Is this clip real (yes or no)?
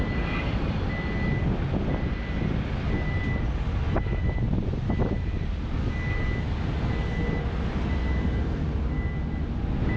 yes